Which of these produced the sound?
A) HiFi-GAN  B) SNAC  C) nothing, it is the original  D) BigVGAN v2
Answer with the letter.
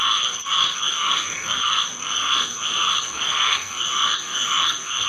B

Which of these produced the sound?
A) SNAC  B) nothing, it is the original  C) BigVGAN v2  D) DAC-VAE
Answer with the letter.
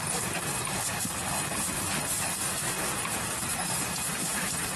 C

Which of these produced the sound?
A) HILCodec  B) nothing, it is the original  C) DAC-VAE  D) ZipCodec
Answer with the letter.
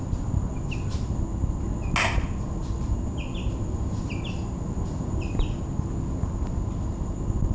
B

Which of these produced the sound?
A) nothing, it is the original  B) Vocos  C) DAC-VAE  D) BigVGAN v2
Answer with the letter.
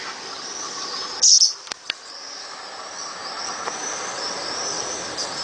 A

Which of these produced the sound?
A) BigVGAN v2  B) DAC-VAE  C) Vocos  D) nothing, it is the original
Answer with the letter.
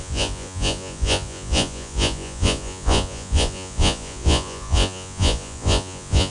C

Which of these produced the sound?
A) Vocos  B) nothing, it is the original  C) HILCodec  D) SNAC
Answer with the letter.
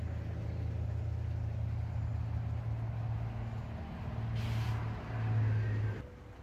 B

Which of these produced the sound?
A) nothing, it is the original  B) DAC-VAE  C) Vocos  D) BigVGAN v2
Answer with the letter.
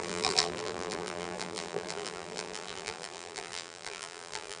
D